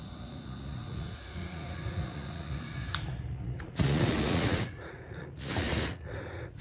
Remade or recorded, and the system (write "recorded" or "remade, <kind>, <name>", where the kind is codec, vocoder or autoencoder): remade, vocoder, Vocos